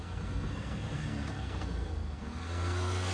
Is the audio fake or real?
fake